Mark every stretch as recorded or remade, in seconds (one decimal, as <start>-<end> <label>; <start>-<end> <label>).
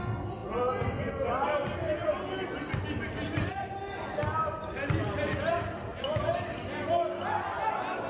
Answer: 0.0-8.1 recorded